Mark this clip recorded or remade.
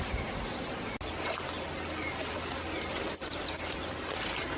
recorded